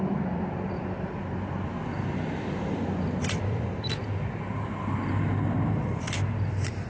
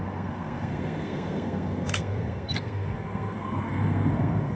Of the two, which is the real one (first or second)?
first